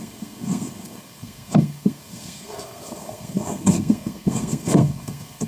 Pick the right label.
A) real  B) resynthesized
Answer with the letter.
B